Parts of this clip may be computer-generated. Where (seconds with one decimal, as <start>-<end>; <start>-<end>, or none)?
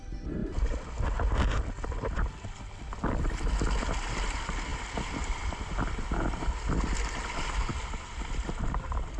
4.7-7.0; 7.7-8.5